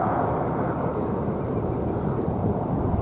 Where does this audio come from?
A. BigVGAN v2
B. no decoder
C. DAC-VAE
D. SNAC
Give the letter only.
B